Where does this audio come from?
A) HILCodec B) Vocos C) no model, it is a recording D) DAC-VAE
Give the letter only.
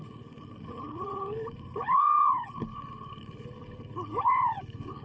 A